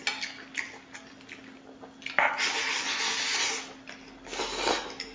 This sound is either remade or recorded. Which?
recorded